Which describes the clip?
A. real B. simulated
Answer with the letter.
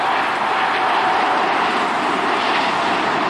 B